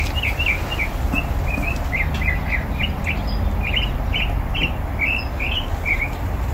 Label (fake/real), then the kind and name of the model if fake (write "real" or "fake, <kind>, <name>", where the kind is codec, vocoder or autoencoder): real